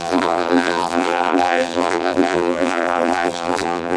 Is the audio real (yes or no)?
no